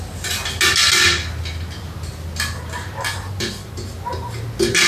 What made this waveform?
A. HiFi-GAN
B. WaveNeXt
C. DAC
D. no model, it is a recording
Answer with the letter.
D